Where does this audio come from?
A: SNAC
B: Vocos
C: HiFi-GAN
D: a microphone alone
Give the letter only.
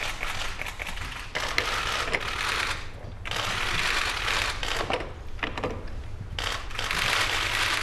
D